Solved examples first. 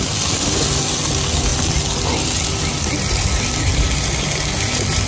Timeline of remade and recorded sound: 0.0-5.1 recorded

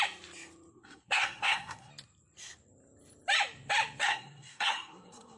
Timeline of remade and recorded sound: 0.0-0.7 recorded; 0.7-1.9 remade; 1.9-4.0 recorded; 4.0-5.4 remade

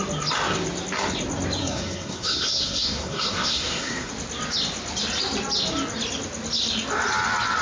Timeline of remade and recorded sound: 0.0-1.6 recorded; 1.6-4.1 remade; 4.1-7.6 recorded

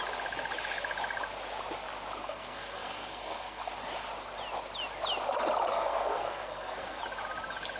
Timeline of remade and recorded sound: 0.0-2.2 recorded; 2.2-3.7 remade; 3.7-5.7 recorded; 5.7-7.0 remade; 7.0-7.8 recorded

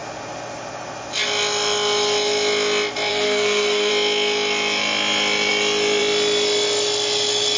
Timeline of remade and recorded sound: 0.0-3.1 recorded; 3.1-3.9 remade; 3.9-7.6 recorded

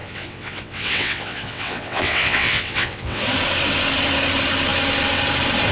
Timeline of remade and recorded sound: 0.0-3.2 remade; 3.2-5.7 recorded

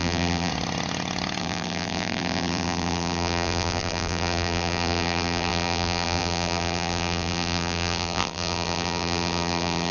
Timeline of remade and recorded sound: 0.0-0.5 remade; 0.5-1.4 recorded; 1.4-9.9 remade

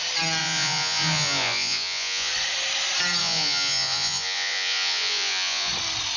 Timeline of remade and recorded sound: 0.0-0.4 recorded; 0.4-2.3 remade; 2.3-3.2 recorded; 3.2-5.7 remade; 5.7-6.2 recorded